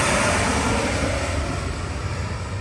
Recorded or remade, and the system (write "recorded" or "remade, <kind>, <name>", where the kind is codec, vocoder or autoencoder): recorded